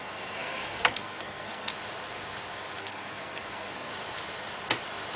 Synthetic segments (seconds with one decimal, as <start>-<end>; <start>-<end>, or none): 0.0-1.7; 2.8-3.9